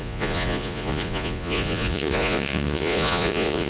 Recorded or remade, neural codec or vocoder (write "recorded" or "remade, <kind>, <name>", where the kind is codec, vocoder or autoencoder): remade, vocoder, Vocos